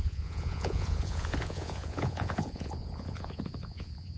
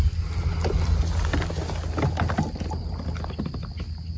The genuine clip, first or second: second